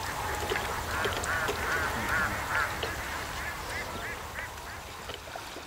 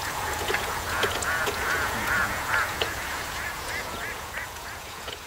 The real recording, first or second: first